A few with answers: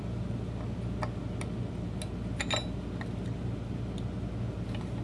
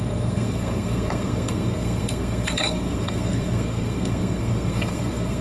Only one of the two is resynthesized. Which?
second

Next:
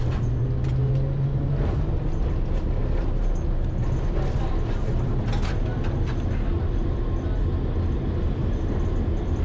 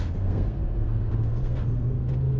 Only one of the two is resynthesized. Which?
second